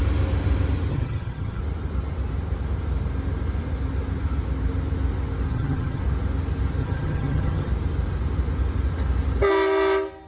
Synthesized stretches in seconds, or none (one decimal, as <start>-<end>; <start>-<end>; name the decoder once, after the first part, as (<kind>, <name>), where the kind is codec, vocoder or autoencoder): 0.9-1.6 (vocoder, HiFi-GAN); 5.5-6.0; 6.8-7.7